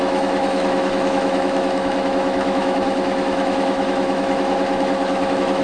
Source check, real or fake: fake